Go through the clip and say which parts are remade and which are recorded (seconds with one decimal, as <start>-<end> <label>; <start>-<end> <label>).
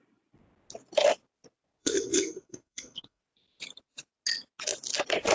0.0-1.8 recorded; 1.8-3.2 remade; 3.2-5.3 recorded